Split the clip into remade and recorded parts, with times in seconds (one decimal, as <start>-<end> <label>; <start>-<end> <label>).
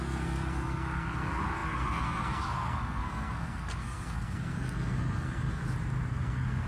0.0-5.6 remade; 5.6-6.1 recorded; 6.1-6.7 remade